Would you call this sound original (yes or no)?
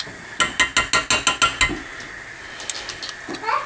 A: yes